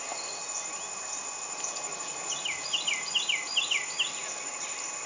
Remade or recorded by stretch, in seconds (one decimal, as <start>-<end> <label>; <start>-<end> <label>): 0.0-5.1 recorded